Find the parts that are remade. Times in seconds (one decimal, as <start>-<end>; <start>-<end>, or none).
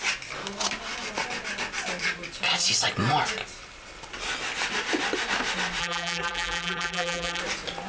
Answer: 5.8-7.4